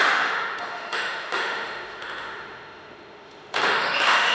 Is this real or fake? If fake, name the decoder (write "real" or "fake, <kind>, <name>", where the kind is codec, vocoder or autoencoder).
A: fake, autoencoder, DAC-VAE